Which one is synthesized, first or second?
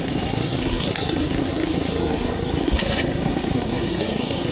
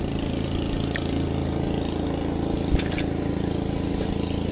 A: first